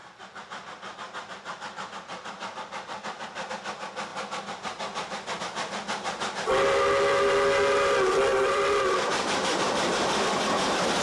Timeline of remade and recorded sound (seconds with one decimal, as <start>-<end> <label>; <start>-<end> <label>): 0.0-8.3 recorded; 8.3-11.0 remade